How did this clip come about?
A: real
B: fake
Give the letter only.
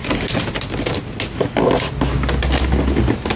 A